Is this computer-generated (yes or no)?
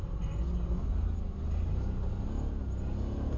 no